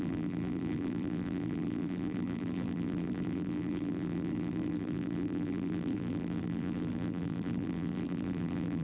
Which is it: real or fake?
fake